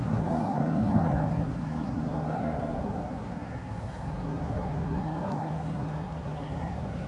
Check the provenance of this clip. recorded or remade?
remade